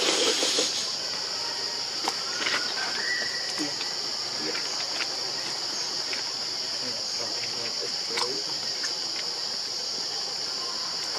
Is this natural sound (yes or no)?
yes